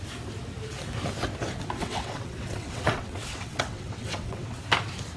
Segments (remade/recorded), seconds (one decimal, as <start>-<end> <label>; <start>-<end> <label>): 0.0-1.8 recorded; 1.8-4.6 remade; 4.6-5.2 recorded